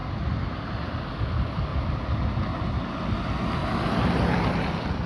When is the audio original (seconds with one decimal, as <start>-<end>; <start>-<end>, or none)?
0.0-1.1; 1.7-2.5; 3.6-4.5